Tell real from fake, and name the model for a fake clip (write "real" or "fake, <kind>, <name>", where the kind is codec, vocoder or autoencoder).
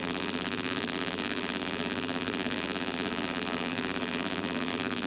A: fake, vocoder, BigVGAN v2